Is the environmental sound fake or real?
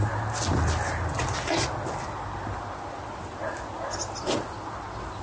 real